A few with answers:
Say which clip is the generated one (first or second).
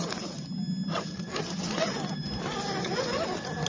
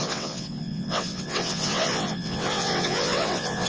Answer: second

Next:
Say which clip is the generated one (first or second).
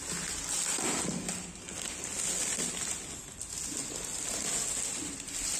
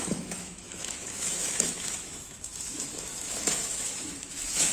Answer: second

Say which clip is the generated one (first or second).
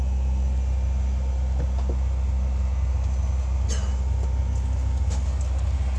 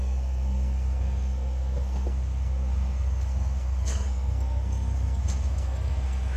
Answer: second